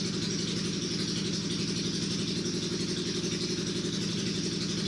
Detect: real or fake real